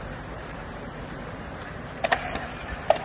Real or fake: fake